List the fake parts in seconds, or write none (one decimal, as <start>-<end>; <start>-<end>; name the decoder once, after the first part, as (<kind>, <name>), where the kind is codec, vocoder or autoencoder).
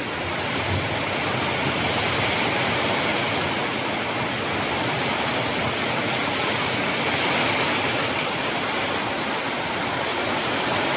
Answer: 3.1-3.9 (vocoder, Vocos); 5.6-6.9; 10.1-10.6